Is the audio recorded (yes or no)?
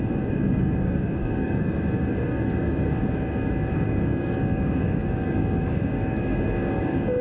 no